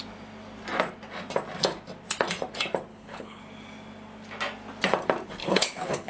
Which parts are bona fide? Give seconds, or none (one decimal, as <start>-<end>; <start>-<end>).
0.0-2.9; 3.4-5.4